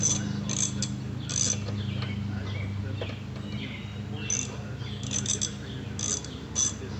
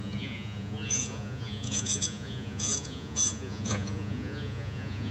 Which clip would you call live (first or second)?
first